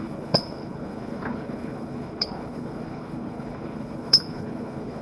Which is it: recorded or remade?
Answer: remade